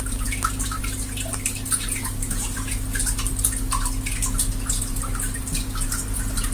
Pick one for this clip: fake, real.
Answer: real